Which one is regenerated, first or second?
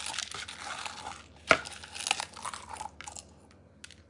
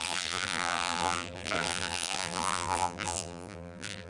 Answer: second